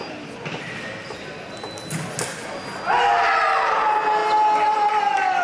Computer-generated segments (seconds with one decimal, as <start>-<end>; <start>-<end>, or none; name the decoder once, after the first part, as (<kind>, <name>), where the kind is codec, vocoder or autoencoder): none